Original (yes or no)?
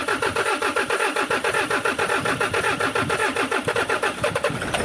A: yes